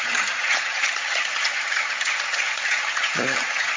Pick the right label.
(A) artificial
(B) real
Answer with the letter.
A